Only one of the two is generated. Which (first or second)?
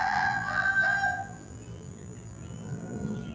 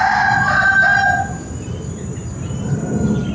first